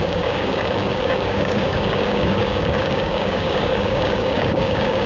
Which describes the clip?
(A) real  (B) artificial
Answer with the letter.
B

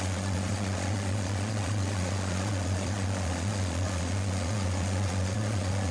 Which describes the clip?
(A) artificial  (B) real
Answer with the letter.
A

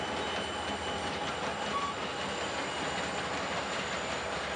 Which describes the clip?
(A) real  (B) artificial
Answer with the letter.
A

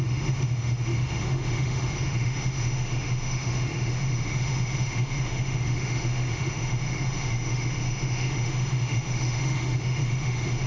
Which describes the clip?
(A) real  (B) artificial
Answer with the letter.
B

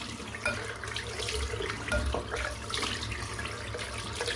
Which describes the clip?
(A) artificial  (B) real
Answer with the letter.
B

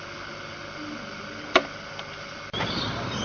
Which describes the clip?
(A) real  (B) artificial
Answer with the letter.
A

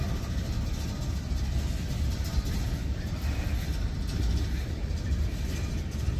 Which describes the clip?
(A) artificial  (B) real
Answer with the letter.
B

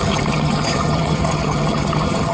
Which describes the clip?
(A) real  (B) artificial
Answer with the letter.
B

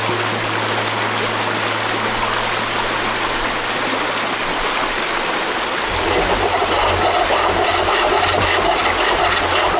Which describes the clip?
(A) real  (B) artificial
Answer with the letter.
A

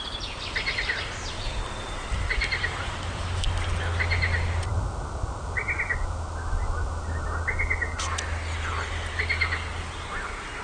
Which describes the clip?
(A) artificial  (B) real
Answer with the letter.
B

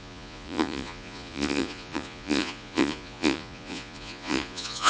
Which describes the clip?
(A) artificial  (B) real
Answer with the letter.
A